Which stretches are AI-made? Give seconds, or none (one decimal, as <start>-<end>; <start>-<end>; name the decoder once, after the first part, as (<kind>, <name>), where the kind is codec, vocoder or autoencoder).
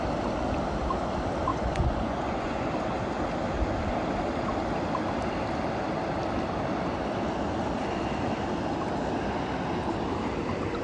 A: 1.5-2.7 (vocoder, Vocos)